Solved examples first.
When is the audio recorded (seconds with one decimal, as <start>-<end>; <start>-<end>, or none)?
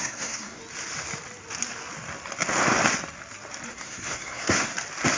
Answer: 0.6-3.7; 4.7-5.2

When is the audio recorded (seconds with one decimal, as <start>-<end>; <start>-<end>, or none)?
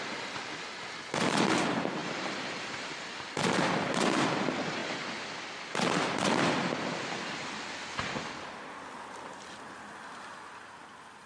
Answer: 0.0-11.3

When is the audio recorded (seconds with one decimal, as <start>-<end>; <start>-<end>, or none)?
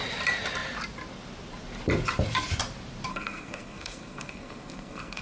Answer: 0.0-3.1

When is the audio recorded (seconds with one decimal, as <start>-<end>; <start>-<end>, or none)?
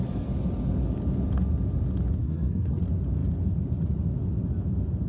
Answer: 0.0-2.2; 2.8-5.1